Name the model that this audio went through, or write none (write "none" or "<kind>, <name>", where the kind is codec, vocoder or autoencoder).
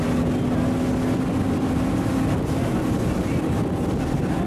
none